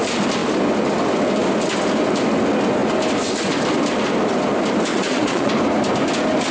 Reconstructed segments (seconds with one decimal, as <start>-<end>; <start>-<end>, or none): 4.9-5.5